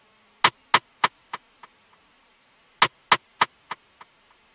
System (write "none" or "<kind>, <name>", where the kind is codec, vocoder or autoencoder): none